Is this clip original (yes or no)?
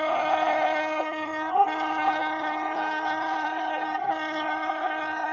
no